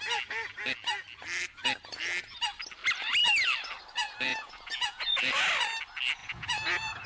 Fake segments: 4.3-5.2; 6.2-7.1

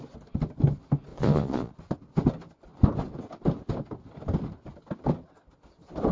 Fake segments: 1.1-1.7

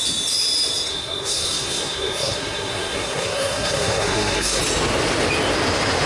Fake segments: 0.9-4.6

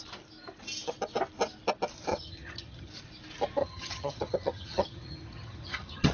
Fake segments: 2.1-2.9; 3.6-6.1

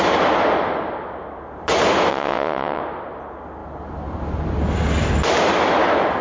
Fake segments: 2.1-2.8

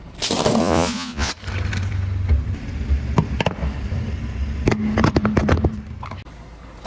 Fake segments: 0.6-1.3